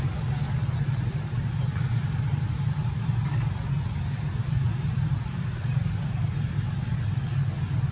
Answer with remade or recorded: recorded